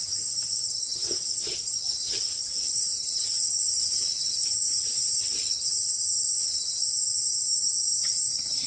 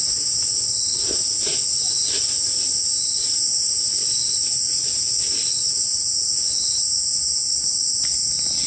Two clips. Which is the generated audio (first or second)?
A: first